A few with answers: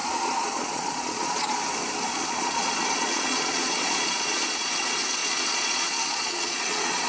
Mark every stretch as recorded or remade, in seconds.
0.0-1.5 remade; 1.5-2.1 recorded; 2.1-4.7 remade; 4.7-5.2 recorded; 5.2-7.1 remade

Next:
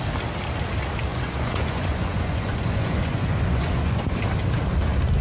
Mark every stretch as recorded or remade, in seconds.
0.0-1.1 recorded; 1.1-4.2 remade; 4.2-5.2 recorded

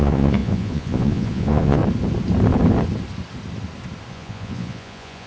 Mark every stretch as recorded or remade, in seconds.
0.0-1.8 remade; 1.8-4.1 recorded; 4.1-5.3 remade

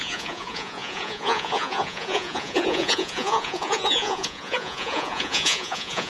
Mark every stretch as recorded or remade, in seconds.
0.0-6.1 remade

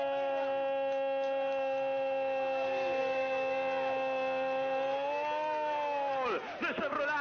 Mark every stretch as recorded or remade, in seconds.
0.0-7.2 recorded